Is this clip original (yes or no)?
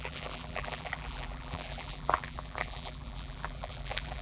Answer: no